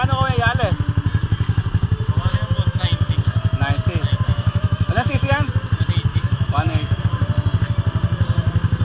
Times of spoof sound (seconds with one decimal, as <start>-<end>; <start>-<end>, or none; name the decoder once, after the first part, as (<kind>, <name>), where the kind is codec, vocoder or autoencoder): 4.3-5.5 (autoencoder, DAC-VAE); 6.1-7.0